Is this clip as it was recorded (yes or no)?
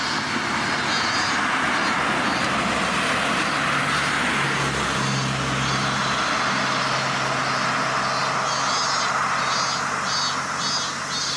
yes